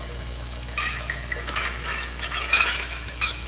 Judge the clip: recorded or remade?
remade